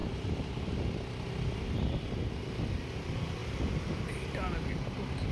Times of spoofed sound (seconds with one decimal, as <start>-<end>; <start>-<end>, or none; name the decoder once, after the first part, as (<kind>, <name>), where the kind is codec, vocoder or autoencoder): none